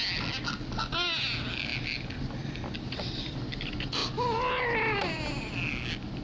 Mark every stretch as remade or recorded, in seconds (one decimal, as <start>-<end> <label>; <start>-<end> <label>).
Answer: 0.0-6.2 recorded